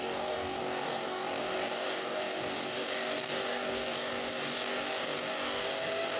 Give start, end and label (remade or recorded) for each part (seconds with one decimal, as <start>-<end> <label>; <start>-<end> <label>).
0.0-6.2 remade

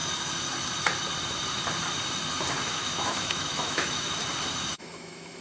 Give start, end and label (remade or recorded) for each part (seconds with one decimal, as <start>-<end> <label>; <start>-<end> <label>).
0.0-2.7 recorded; 2.7-4.2 remade; 4.2-4.7 recorded; 4.7-5.4 remade

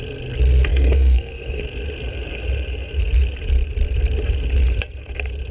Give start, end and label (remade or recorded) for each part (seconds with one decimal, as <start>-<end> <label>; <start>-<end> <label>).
0.0-0.7 recorded; 0.7-1.6 remade; 1.6-5.5 recorded

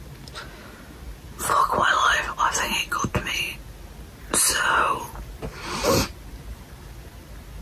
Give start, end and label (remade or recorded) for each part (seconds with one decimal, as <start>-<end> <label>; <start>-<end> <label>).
0.0-7.6 recorded

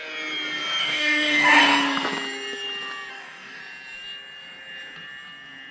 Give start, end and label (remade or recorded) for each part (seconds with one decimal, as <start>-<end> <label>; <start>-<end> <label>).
0.0-0.8 recorded; 0.8-1.6 remade; 1.6-3.1 recorded; 3.1-3.6 remade; 3.6-5.7 recorded

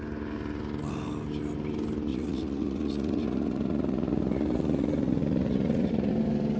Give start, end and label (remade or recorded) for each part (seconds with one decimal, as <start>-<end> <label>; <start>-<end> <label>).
0.0-2.1 recorded; 2.1-6.1 remade; 6.1-6.6 recorded

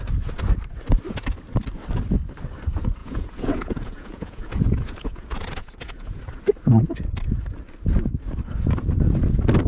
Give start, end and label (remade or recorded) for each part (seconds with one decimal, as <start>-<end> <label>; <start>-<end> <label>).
0.0-3.0 recorded; 3.0-6.2 remade; 6.2-9.7 recorded

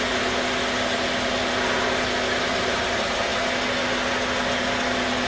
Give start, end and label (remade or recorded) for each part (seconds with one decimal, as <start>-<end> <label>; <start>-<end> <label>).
0.0-5.3 recorded